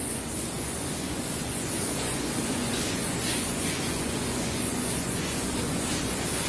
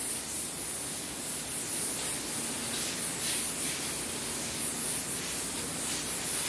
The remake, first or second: first